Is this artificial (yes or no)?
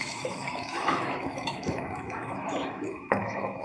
yes